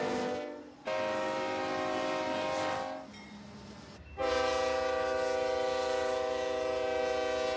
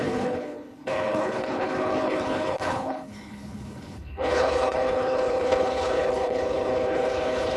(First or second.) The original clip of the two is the first